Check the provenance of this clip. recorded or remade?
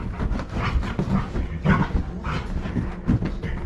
recorded